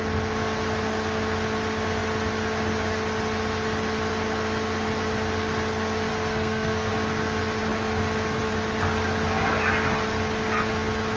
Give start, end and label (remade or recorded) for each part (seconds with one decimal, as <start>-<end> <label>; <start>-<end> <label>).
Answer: 0.0-6.1 recorded; 6.1-6.9 remade; 6.9-11.2 recorded